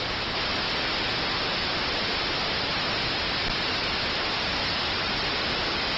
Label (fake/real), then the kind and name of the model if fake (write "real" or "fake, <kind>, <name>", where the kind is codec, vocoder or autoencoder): real